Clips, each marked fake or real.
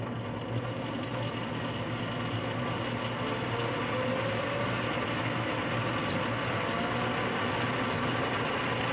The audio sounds real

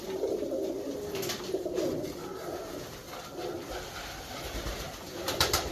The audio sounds real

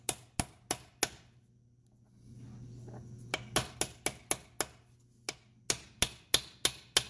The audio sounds real